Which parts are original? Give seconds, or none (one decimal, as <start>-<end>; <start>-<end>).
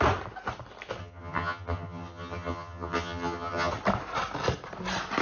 0.0-1.0; 3.7-5.2